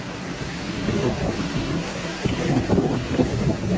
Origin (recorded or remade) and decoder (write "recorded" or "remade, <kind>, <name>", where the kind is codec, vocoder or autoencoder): remade, codec, SNAC